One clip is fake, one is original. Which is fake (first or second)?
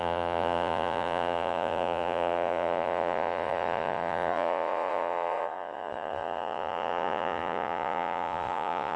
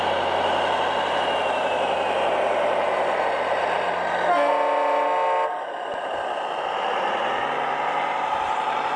first